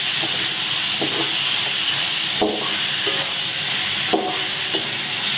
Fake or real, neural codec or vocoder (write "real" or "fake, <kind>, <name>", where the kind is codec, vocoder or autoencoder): real